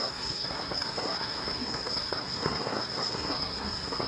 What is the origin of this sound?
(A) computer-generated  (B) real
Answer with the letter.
A